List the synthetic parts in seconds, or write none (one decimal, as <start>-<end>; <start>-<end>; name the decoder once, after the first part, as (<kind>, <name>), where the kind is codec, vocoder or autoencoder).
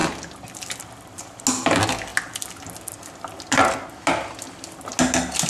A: none